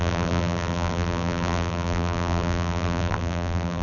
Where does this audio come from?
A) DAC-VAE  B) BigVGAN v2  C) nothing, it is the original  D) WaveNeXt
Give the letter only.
B